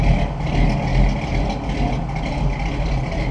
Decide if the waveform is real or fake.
real